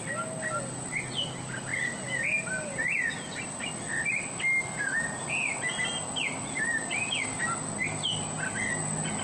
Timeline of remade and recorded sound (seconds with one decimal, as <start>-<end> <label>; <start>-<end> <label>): 0.0-9.2 recorded